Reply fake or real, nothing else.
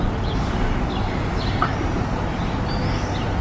real